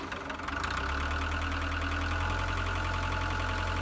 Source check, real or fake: real